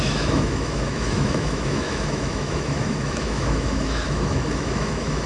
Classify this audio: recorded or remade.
remade